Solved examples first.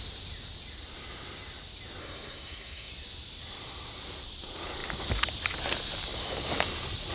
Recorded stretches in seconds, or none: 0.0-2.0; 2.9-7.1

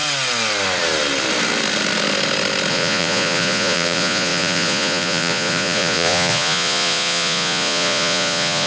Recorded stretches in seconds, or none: 0.0-2.7